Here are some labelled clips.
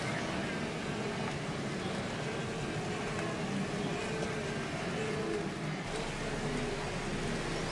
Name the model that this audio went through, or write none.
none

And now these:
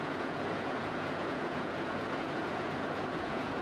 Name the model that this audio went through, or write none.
vocoder, Vocos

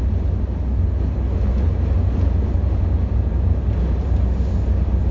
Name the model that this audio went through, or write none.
none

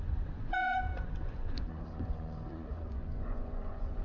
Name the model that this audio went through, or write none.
vocoder, Vocos